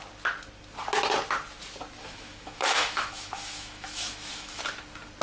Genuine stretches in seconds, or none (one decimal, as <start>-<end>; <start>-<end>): 0.0-2.0; 4.6-5.2